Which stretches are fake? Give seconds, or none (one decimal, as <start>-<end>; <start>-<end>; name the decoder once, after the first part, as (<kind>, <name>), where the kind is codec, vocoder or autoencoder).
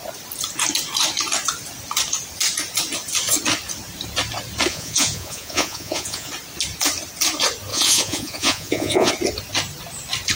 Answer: 4.7-6.3 (vocoder, Vocos); 7.7-9.1